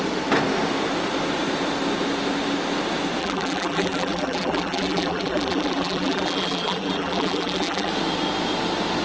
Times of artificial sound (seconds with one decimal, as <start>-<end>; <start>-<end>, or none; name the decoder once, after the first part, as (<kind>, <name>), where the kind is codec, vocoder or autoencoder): 3.2-7.9 (vocoder, BigVGAN v2)